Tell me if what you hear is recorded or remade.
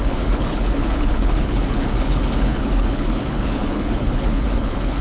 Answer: remade